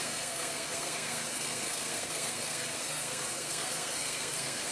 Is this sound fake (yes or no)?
yes